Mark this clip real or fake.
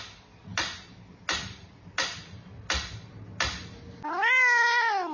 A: real